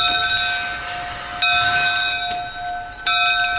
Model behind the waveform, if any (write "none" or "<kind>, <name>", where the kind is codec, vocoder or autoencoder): none